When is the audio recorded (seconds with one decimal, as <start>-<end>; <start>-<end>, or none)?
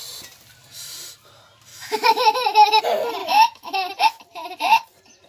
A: 0.0-1.7; 2.8-3.2; 3.9-5.3